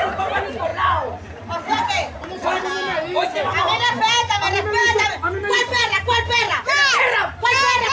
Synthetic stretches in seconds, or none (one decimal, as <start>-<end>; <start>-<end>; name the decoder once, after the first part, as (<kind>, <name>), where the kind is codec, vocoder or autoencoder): 0.7-2.6 (vocoder, BigVGAN v2); 4.8-7.9